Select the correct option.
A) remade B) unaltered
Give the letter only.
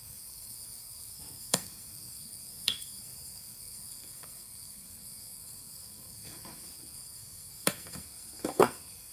A